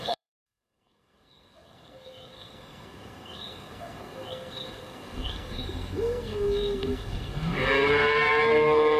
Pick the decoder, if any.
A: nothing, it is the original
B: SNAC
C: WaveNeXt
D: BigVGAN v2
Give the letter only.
B